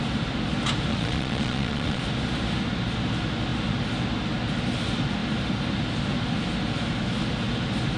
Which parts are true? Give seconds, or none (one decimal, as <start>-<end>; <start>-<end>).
0.0-0.9; 2.0-8.0